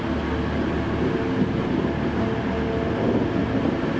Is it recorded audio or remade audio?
recorded